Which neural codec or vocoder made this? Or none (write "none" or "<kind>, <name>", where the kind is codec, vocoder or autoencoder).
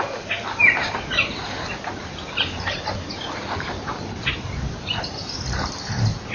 none